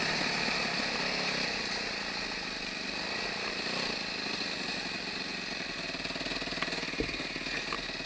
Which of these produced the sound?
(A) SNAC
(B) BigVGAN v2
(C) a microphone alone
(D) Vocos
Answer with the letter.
C